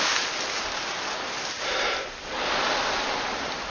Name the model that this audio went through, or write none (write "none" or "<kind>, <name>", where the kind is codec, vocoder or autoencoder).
none